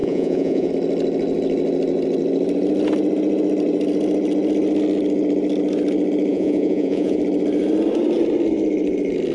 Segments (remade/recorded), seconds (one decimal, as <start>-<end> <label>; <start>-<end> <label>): 0.0-0.7 remade; 0.7-6.3 recorded; 6.3-7.2 remade; 7.2-9.3 recorded